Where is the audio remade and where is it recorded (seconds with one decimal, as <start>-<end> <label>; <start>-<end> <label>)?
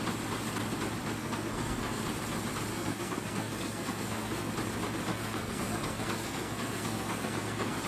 0.0-1.2 recorded; 1.2-2.0 remade; 2.0-2.7 recorded; 2.7-4.5 remade; 4.5-5.1 recorded; 5.1-7.9 remade